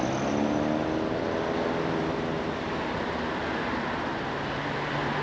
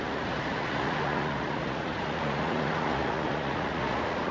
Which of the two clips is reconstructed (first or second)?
second